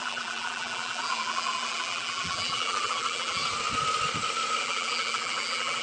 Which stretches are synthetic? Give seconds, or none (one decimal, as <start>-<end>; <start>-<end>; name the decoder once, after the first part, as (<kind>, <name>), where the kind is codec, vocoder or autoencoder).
0.0-3.4 (vocoder, BigVGAN v2); 4.6-5.8